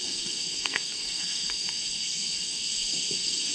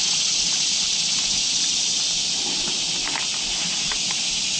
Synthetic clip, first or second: first